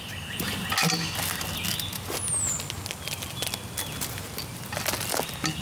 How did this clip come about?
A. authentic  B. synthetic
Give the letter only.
A